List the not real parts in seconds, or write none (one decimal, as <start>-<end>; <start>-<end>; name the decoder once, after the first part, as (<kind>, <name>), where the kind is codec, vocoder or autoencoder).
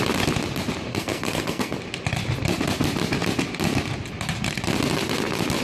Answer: 0.9-1.8 (codec, SNAC)